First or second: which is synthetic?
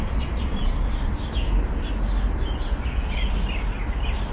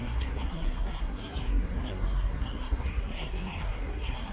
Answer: second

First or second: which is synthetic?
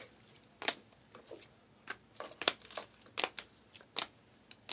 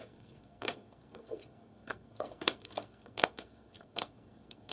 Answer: second